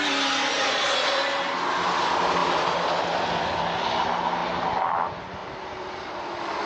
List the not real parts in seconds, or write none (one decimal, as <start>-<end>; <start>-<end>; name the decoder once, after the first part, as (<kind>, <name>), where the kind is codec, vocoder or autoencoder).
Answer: 0.5-1.2 (vocoder, Vocos)